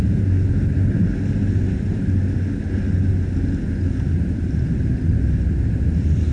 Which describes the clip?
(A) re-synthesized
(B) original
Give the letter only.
B